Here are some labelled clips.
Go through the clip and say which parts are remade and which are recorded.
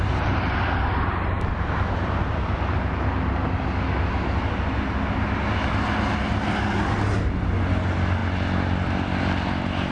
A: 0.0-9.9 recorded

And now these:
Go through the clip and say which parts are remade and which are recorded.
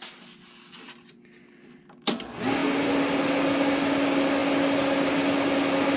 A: 0.0-6.0 recorded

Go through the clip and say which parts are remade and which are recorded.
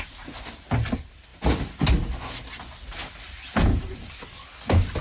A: 0.0-5.0 recorded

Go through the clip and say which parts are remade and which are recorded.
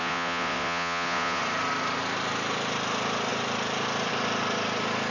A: 0.0-1.4 remade; 1.4-5.1 recorded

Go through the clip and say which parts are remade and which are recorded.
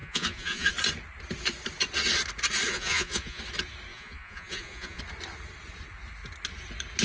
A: 0.0-0.7 remade; 0.7-2.7 recorded; 2.7-3.4 remade; 3.4-3.9 recorded; 3.9-5.0 remade; 5.0-7.0 recorded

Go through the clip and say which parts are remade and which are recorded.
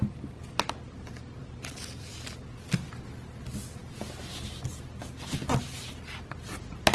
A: 0.0-6.9 recorded